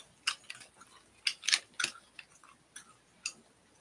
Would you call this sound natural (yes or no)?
yes